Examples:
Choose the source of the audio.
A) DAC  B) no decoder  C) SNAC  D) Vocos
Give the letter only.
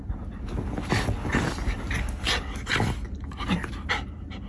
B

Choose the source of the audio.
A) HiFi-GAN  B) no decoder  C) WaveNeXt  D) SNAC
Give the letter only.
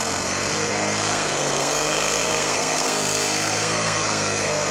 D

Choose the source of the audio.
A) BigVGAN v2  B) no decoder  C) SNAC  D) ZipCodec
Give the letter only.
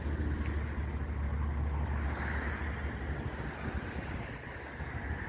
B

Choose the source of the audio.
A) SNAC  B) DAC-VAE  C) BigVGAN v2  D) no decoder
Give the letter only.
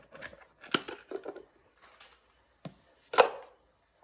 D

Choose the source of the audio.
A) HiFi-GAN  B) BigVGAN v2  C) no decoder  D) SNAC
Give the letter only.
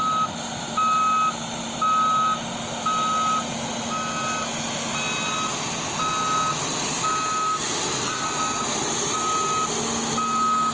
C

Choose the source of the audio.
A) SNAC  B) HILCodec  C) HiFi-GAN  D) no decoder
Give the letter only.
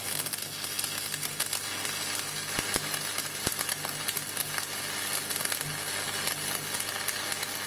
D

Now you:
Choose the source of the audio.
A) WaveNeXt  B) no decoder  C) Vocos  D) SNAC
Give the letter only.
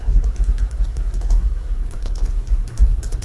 D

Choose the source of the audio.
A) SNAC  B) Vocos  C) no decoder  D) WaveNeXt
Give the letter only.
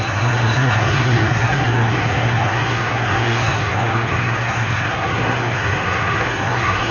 A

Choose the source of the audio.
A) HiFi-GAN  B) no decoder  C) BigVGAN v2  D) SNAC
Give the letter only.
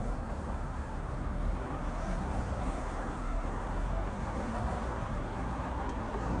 D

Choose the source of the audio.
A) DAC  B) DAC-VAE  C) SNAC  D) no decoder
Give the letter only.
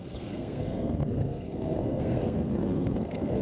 C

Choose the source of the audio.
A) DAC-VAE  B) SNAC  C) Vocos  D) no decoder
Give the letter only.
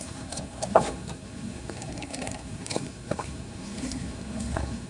B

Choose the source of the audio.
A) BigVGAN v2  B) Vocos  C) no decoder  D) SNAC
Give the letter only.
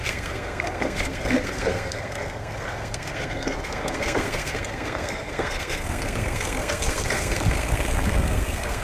D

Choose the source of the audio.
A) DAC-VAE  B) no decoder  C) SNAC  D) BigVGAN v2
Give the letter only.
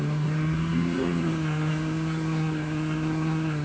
C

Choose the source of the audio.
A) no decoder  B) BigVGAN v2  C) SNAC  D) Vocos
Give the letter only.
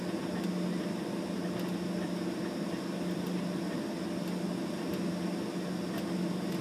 A